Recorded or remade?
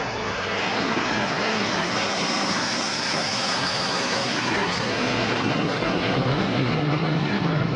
remade